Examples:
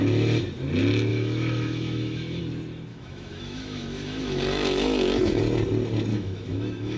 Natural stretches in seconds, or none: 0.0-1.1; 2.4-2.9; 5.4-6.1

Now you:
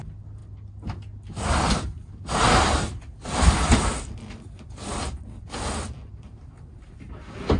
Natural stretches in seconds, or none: 0.0-7.6